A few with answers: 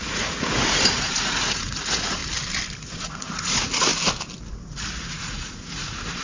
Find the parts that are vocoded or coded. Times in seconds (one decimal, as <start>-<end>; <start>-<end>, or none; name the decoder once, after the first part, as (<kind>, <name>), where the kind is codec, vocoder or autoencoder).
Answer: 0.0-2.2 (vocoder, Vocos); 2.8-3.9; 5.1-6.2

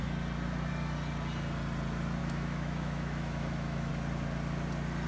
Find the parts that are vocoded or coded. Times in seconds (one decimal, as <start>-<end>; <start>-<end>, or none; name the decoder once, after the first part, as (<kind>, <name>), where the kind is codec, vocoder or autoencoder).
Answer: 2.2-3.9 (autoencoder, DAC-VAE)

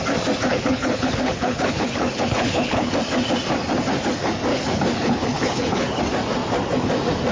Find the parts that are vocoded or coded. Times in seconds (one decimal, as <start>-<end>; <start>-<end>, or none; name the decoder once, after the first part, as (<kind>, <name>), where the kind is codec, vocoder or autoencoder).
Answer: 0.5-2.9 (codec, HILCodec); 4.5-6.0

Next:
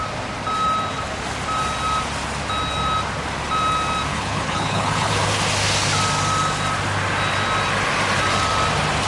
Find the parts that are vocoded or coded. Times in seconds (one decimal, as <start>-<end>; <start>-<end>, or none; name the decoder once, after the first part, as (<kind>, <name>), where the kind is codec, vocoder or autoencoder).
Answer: 4.1-5.1 (codec, HILCodec)

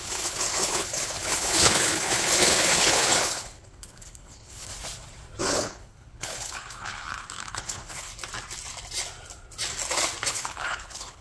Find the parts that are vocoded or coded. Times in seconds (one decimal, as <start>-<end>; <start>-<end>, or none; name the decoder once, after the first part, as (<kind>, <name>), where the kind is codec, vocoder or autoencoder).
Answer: 0.0-4.7 (codec, HILCodec); 5.4-8.1; 10.3-11.2